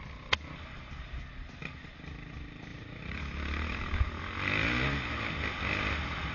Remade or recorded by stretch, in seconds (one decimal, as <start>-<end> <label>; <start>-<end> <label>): 0.0-2.7 recorded; 2.7-3.2 remade; 3.2-6.3 recorded